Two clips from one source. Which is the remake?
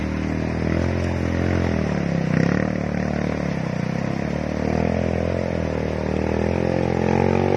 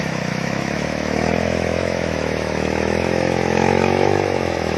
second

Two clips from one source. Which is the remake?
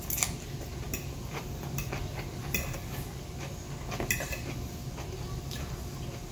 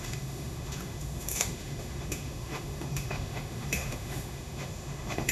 second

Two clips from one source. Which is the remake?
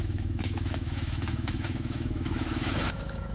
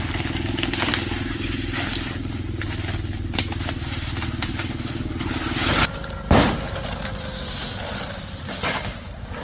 first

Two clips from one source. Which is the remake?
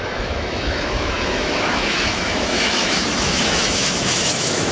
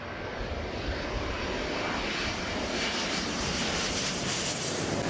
first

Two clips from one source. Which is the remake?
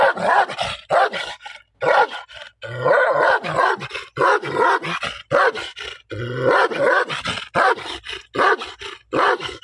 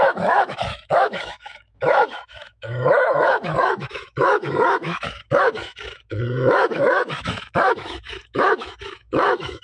second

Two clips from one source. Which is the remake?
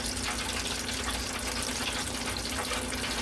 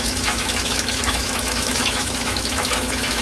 second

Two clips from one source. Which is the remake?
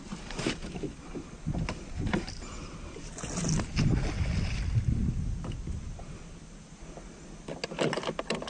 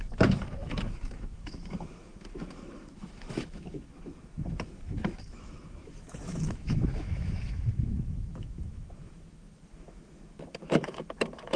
second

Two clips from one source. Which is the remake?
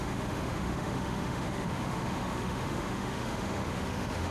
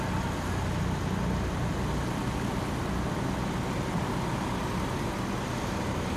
first